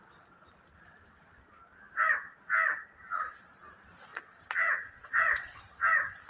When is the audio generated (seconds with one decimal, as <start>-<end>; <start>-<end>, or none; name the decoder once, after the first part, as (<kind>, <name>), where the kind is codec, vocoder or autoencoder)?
4.1-5.6 (vocoder, WaveNeXt)